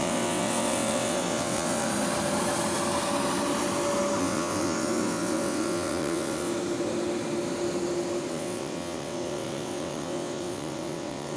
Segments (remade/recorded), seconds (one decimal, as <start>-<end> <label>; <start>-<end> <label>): 0.0-1.9 remade; 1.9-4.2 recorded; 4.2-6.5 remade; 6.5-8.3 recorded; 8.3-11.4 remade